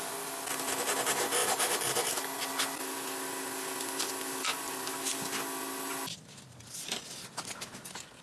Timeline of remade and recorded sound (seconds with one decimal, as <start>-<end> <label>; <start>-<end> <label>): 0.0-8.2 recorded